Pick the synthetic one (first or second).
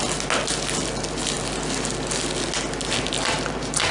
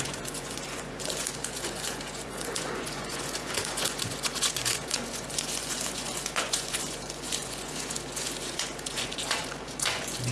second